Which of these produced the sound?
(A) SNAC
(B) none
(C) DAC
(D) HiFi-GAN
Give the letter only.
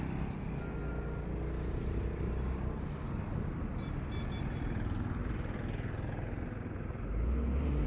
B